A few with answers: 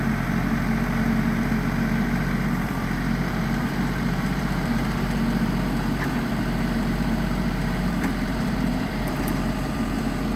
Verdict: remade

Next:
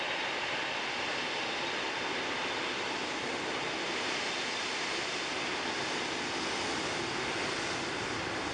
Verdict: remade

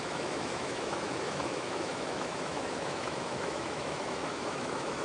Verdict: remade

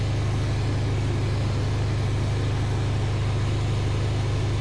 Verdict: recorded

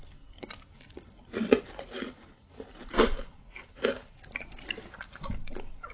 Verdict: recorded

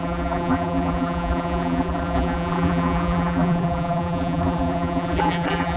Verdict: remade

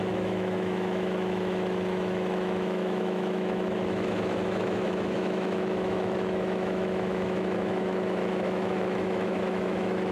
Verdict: remade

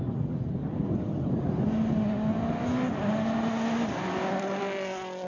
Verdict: recorded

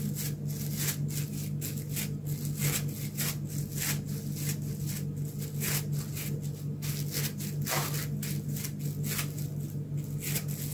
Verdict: recorded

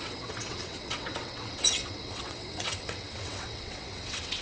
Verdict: remade